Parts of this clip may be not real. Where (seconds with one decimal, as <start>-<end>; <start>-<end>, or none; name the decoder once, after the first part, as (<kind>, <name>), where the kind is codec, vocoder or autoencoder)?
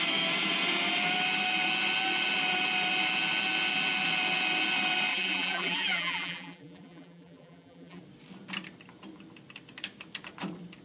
5.1-8.0 (vocoder, BigVGAN v2)